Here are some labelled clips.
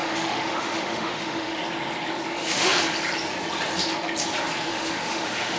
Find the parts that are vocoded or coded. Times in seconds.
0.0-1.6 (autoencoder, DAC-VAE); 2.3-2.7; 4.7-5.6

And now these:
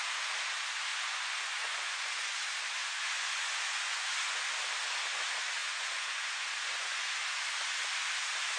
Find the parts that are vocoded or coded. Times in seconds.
0.9-2.4 (vocoder, Vocos); 2.8-4.4; 5.6-7.1

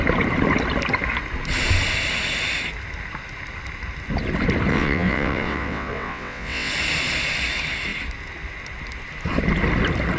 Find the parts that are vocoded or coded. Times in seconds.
4.7-6.7 (vocoder, WaveNeXt)

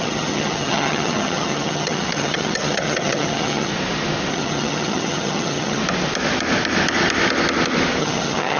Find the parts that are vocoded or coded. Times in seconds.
0.0-3.7 (vocoder, HiFi-GAN); 4.3-5.8; 8.0-8.6

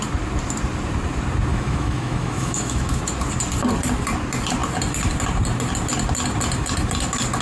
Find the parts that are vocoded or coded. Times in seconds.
1.5-3.0 (autoencoder, DAC-VAE)

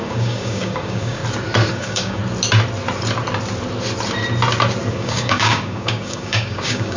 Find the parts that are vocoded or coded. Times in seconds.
0.0-1.2 (codec, DAC); 1.7-2.2; 4.9-7.0

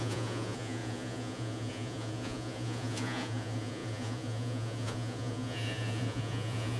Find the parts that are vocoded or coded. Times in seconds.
0.0-6.8 (vocoder, Vocos)

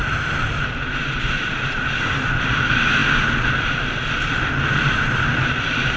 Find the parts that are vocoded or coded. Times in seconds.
none